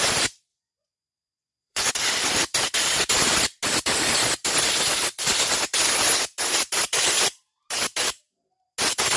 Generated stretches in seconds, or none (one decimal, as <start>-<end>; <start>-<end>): 0.5-1.9